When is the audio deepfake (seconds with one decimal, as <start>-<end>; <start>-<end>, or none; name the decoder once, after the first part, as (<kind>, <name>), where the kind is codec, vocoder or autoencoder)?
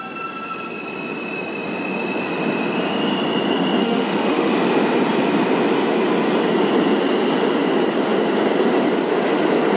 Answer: 3.8-4.5 (autoencoder, DAC-VAE)